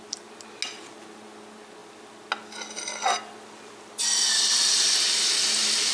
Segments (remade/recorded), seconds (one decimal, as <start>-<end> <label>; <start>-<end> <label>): 0.0-5.9 recorded